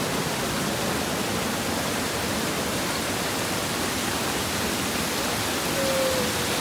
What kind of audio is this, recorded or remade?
recorded